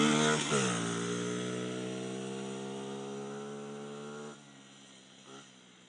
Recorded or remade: recorded